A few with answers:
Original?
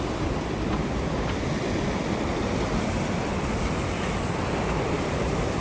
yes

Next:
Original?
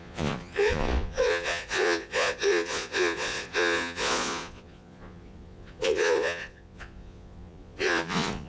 no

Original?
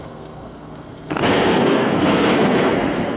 no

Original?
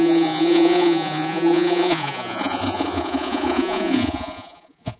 no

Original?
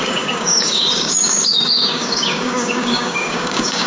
no